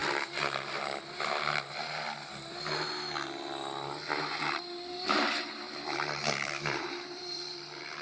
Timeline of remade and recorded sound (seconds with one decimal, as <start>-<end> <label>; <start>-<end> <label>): 0.0-4.4 recorded; 4.4-8.0 remade